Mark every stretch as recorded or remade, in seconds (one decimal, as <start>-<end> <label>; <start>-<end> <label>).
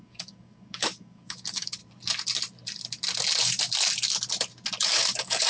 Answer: 0.0-1.8 remade; 1.8-4.8 recorded; 4.8-5.5 remade